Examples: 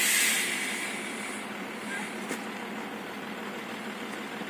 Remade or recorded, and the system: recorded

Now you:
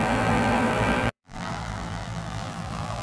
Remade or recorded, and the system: remade, vocoder, BigVGAN v2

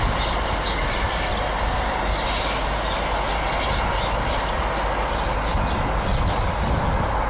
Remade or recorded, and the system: recorded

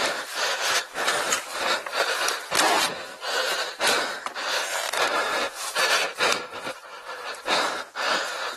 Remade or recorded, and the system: remade, vocoder, BigVGAN v2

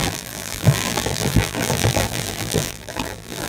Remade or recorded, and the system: remade, vocoder, BigVGAN v2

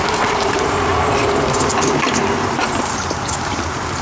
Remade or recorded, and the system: remade, vocoder, BigVGAN v2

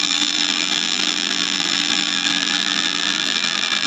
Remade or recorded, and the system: remade, vocoder, BigVGAN v2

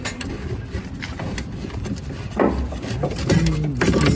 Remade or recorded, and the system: recorded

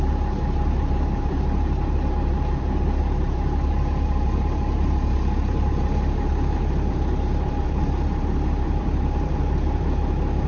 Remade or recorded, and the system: remade, vocoder, BigVGAN v2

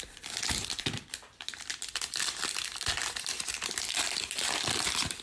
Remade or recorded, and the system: remade, vocoder, BigVGAN v2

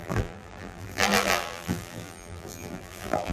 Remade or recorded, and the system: remade, vocoder, BigVGAN v2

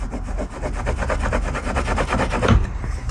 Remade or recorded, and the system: recorded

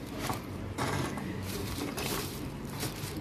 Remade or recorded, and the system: remade, vocoder, BigVGAN v2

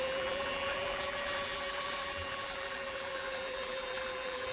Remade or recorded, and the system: remade, vocoder, BigVGAN v2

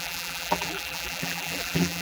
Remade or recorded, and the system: remade, vocoder, BigVGAN v2